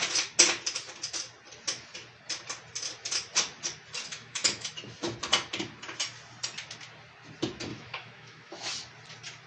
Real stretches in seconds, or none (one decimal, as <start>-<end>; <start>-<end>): 0.0-4.1; 4.7-7.7; 8.7-9.5